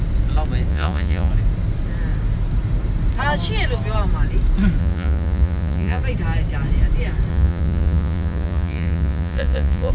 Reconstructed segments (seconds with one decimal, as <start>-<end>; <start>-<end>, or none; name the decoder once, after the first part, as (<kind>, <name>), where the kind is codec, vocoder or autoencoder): 0.7-1.3 (vocoder, Vocos); 4.8-6.0; 7.3-9.9